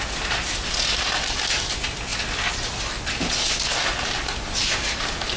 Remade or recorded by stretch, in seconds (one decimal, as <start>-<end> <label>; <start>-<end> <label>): 0.0-5.4 recorded